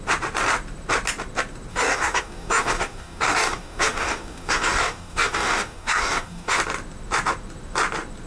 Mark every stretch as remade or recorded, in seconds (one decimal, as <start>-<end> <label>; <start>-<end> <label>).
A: 0.0-1.7 recorded; 1.7-6.6 remade; 6.6-8.3 recorded